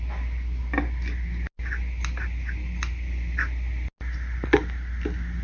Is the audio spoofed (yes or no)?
no